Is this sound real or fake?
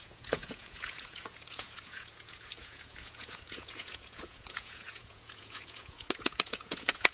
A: fake